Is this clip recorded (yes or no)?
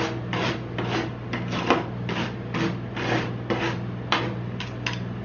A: yes